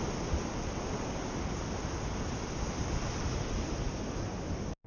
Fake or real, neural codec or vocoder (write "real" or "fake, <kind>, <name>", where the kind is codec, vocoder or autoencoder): real